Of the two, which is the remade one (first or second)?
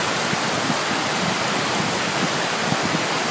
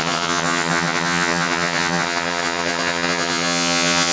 second